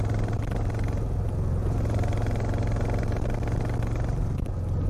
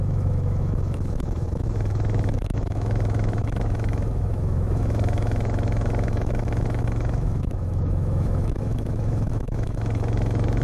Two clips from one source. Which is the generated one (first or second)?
second